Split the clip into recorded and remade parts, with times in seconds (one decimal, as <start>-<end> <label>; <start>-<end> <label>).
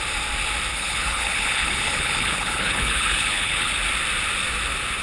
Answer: 0.0-0.7 recorded; 0.7-3.7 remade; 3.7-5.0 recorded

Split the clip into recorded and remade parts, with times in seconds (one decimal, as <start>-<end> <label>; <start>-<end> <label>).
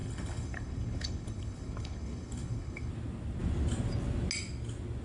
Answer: 0.0-2.9 remade; 2.9-5.0 recorded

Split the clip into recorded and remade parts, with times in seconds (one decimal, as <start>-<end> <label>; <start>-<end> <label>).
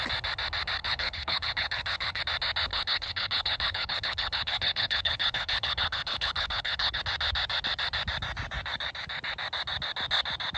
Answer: 0.0-0.8 recorded; 0.8-2.2 remade; 2.2-2.7 recorded; 2.7-7.0 remade; 7.0-10.6 recorded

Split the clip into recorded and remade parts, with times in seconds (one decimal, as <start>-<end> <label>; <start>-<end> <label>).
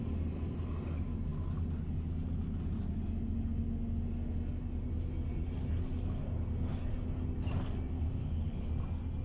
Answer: 0.0-8.2 recorded; 8.2-8.7 remade; 8.7-9.2 recorded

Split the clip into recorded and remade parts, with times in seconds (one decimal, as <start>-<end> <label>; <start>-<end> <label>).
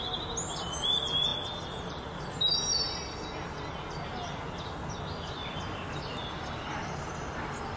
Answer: 0.0-7.8 recorded